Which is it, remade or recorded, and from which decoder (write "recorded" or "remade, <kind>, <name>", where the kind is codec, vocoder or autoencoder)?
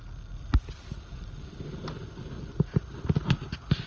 recorded